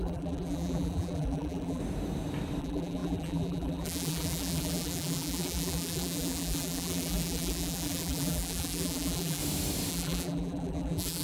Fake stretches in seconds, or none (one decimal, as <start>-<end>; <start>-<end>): 0.0-1.8; 2.6-9.4; 9.9-11.2